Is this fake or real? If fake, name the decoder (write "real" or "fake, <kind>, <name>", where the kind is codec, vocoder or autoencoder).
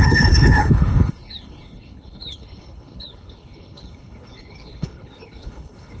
fake, codec, HILCodec